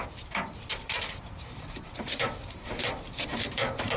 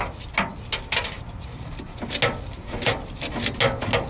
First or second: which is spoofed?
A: first